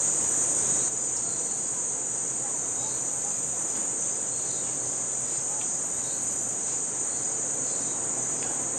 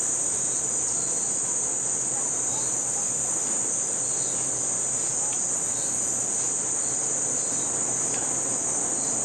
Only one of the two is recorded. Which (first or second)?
second